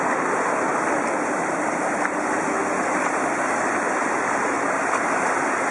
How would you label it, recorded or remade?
recorded